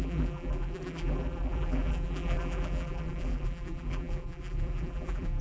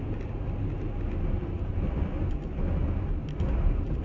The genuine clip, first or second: second